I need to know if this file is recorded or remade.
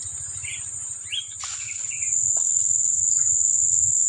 recorded